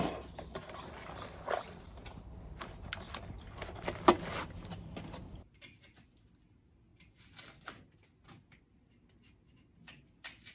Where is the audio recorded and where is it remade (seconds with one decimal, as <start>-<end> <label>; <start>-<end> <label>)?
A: 0.0-10.5 recorded